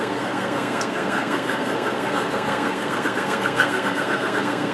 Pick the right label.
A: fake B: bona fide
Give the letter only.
A